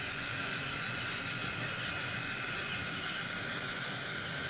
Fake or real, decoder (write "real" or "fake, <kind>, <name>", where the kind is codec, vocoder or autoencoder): fake, vocoder, Vocos